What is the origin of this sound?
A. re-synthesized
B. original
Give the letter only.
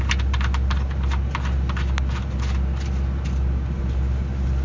B